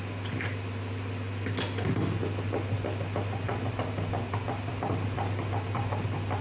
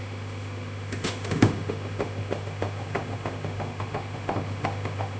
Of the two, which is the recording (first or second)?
first